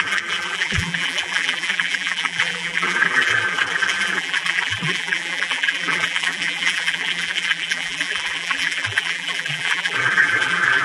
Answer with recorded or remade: remade